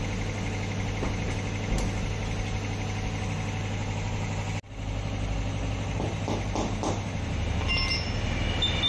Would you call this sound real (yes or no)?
yes